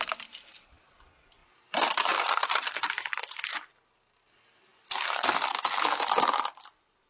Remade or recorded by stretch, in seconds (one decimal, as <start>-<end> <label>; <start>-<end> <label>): 0.0-7.1 recorded